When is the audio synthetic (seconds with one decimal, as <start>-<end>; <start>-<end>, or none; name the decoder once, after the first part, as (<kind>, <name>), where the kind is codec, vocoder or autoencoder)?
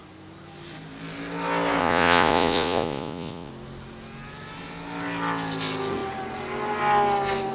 1.8-3.5 (vocoder, Vocos)